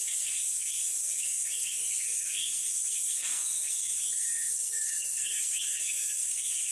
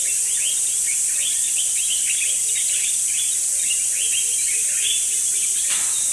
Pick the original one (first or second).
second